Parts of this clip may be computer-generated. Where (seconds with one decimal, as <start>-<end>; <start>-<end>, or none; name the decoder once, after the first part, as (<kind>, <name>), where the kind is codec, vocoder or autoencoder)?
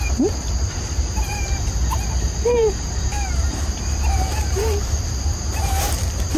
0.0-6.4 (vocoder, BigVGAN v2)